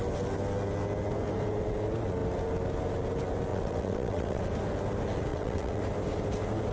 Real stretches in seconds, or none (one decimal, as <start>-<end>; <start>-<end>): 0.0-3.5; 4.4-5.3; 5.8-6.7